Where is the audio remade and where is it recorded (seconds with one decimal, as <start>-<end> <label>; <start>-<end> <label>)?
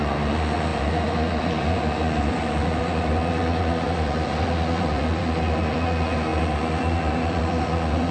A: 0.0-8.1 remade